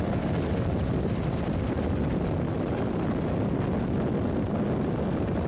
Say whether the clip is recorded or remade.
recorded